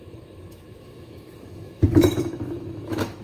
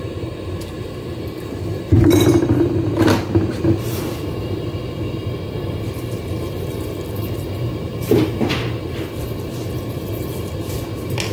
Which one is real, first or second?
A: second